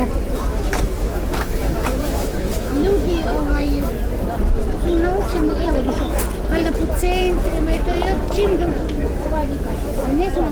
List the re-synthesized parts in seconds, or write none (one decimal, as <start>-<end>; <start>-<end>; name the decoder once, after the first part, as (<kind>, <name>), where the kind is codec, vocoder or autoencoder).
0.5-3.9 (autoencoder, DAC-VAE)